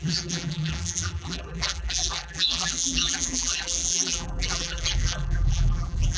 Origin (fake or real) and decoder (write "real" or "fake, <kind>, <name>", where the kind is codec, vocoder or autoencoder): fake, vocoder, BigVGAN v2